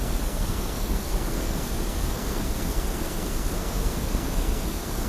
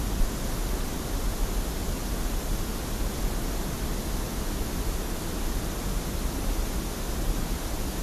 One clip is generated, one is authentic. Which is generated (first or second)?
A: first